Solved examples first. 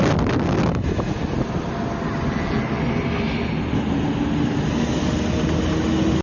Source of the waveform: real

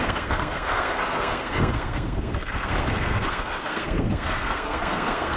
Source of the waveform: fake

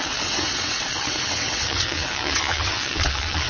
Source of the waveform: fake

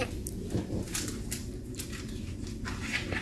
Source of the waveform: real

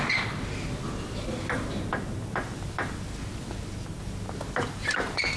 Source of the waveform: real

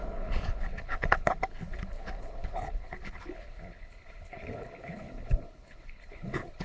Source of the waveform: fake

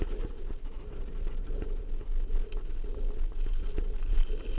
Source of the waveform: real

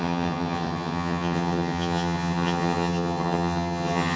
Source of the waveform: fake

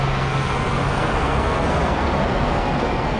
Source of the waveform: fake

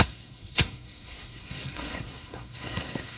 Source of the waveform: fake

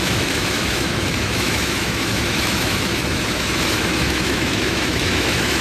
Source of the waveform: fake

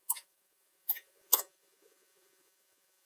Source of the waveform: fake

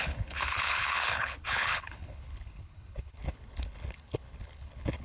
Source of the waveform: fake